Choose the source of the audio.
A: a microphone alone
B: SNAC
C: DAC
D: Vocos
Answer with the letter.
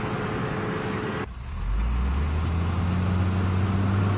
A